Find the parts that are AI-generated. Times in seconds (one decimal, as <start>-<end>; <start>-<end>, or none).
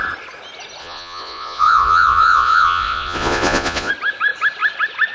0.8-3.9